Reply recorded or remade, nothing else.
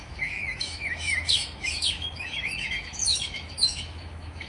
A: remade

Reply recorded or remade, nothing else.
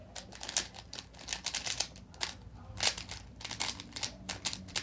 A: recorded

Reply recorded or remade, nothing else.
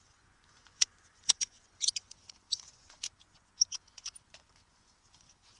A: remade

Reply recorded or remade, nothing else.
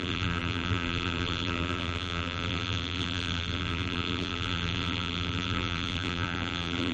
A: remade